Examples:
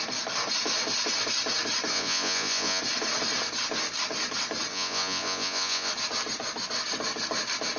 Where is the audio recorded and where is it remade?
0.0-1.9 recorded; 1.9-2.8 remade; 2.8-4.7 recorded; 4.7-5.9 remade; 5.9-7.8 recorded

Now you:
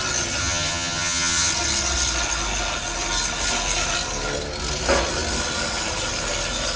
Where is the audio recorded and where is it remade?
0.0-0.4 recorded; 0.4-1.5 remade; 1.5-6.8 recorded

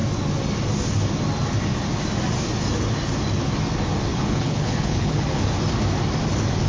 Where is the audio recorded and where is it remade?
0.0-4.1 recorded; 4.1-5.4 remade; 5.4-6.7 recorded

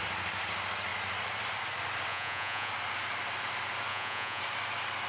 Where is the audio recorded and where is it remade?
0.0-2.1 recorded; 2.1-2.7 remade; 2.7-3.9 recorded; 3.9-4.4 remade; 4.4-5.1 recorded

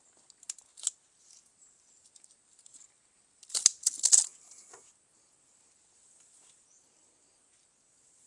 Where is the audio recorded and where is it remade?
0.0-8.3 recorded

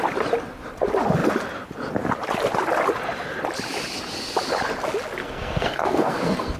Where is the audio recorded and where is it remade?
0.0-5.2 recorded; 5.2-6.6 remade

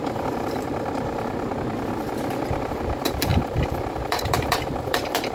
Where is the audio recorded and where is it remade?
0.0-1.5 remade; 1.5-2.5 recorded; 2.5-5.3 remade

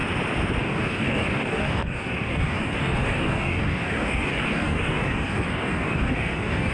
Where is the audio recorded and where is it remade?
0.0-0.6 recorded; 0.6-6.7 remade